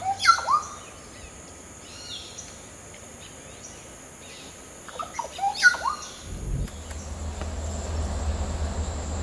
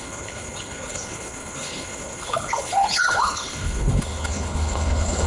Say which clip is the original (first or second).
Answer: first